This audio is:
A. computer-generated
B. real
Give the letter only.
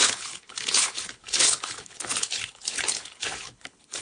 A